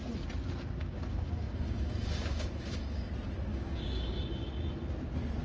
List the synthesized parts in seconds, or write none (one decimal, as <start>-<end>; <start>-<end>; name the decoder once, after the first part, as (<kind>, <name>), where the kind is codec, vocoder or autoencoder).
0.8-3.1 (codec, DAC); 3.5-4.2